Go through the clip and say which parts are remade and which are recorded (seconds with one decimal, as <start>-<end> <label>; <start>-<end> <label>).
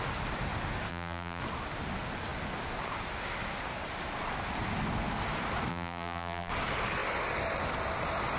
0.0-0.9 recorded; 0.9-1.4 remade; 1.4-5.7 recorded; 5.7-6.5 remade; 6.5-8.4 recorded